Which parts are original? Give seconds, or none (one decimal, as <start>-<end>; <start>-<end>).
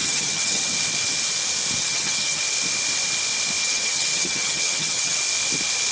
0.7-1.8; 2.4-3.6; 5.2-5.9